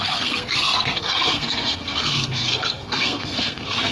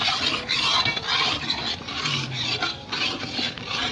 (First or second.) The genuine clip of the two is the second